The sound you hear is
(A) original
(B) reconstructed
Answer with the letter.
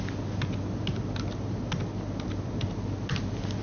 A